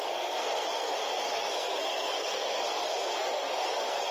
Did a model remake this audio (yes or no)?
yes